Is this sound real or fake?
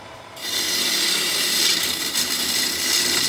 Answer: fake